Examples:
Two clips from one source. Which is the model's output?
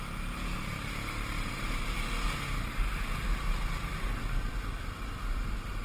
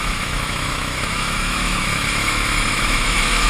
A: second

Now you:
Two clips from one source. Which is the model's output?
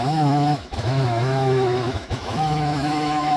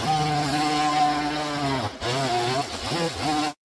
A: first